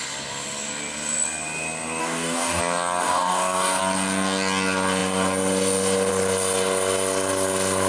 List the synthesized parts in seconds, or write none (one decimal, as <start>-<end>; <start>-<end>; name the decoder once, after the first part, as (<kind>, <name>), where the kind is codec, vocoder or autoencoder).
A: 2.0-2.6 (codec, DAC); 3.0-3.8